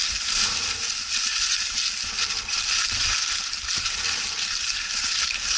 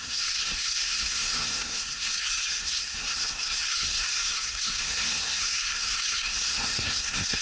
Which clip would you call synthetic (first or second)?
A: second